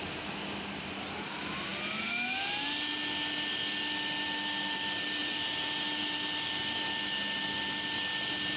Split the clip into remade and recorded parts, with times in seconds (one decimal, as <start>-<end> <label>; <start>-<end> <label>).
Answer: 0.0-8.6 recorded